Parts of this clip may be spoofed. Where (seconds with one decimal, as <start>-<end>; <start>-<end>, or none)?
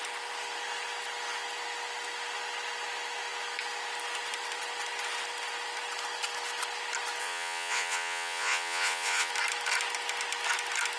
7.2-9.3